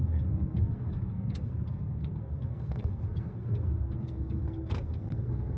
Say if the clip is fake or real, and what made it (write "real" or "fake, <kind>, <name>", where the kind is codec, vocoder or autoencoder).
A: fake, codec, SNAC